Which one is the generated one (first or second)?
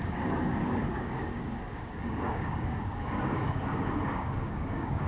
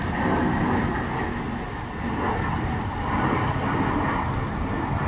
first